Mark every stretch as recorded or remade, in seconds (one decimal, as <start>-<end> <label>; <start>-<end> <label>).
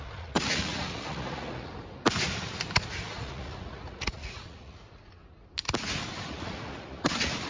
0.0-1.7 remade; 1.7-3.1 recorded; 3.1-5.2 remade; 5.2-6.2 recorded; 6.2-7.5 remade